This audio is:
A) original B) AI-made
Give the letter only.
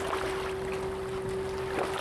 A